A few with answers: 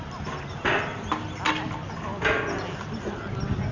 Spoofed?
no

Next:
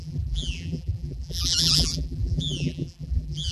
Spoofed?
yes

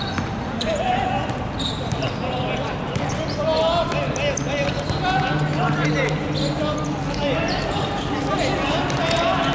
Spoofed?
no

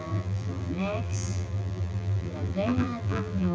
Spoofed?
yes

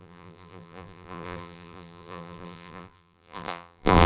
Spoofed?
yes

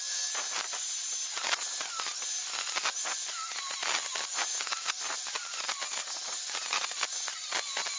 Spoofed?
no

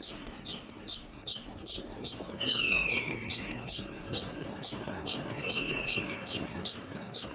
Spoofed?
yes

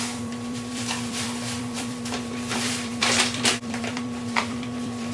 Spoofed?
yes